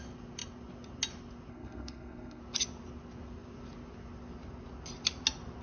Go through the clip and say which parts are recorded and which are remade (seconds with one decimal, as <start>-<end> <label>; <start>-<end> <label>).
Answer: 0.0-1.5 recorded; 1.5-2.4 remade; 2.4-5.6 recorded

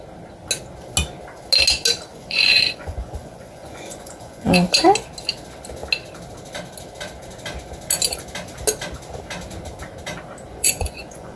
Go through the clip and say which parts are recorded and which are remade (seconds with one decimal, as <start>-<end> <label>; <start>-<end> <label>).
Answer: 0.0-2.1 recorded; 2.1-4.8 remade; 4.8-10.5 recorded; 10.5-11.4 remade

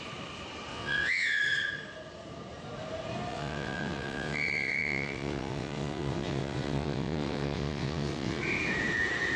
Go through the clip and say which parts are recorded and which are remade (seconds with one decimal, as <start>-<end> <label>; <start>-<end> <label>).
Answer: 0.0-0.7 recorded; 0.7-1.4 remade; 1.4-3.3 recorded; 3.3-8.4 remade; 8.4-9.4 recorded